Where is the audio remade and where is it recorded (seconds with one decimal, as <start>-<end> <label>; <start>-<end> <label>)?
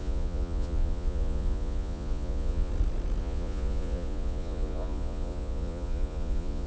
0.0-2.7 remade; 2.7-3.2 recorded; 3.2-6.7 remade